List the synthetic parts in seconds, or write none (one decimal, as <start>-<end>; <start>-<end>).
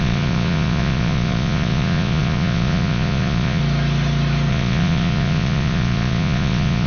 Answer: 0.0-3.6; 4.5-6.9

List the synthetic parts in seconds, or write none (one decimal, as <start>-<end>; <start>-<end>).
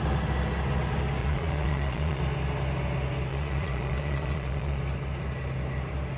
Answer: 1.2-2.2; 3.3-4.8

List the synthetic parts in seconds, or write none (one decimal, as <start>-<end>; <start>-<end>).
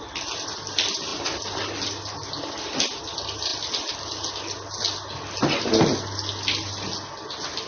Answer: none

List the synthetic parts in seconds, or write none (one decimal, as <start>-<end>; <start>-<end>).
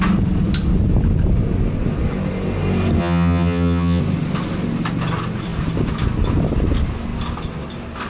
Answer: 3.0-4.0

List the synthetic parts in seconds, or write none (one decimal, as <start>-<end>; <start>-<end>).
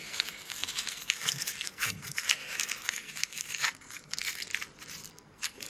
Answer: 0.0-4.5; 5.1-5.7